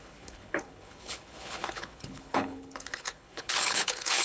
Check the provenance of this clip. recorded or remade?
remade